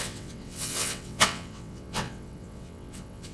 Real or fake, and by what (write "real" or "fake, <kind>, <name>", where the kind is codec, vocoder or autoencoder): fake, vocoder, WaveNeXt